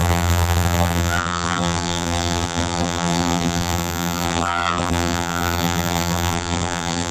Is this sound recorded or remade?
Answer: remade